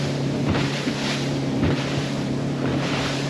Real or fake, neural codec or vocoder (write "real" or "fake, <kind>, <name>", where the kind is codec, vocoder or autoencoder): fake, vocoder, BigVGAN v2